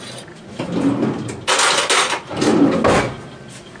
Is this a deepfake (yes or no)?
no